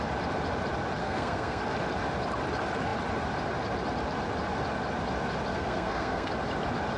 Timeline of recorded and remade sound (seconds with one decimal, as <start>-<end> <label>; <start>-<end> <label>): 0.0-1.0 recorded; 1.0-1.6 remade; 1.6-5.5 recorded; 5.5-6.3 remade; 6.3-7.0 recorded